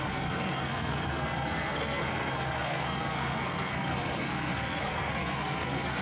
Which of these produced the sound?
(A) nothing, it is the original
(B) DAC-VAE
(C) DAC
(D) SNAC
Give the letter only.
D